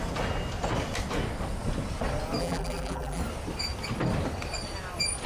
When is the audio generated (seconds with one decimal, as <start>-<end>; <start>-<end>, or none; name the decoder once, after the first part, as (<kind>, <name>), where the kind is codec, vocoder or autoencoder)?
2.4-3.2 (vocoder, BigVGAN v2)